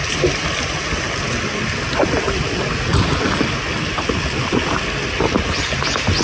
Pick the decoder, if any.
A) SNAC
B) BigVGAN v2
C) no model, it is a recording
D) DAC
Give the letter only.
C